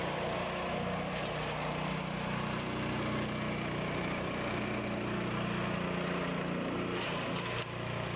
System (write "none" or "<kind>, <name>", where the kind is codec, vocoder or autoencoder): none